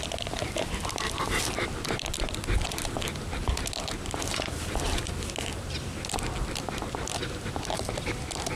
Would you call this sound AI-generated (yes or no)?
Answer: no